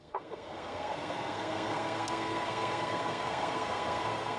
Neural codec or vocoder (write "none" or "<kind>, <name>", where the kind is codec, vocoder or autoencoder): codec, SNAC